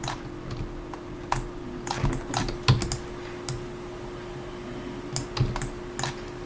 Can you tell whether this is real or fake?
real